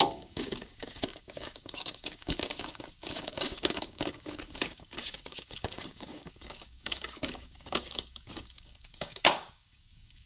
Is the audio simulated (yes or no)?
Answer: yes